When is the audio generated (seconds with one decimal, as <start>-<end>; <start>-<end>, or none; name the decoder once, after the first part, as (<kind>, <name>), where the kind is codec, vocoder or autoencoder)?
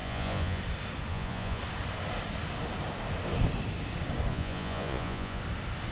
0.0-0.6 (vocoder, Vocos); 1.1-1.6; 4.3-5.4